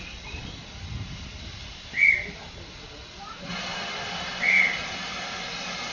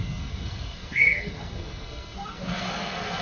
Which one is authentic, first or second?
first